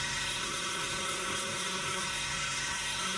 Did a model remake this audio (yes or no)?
yes